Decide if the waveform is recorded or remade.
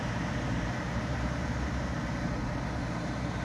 remade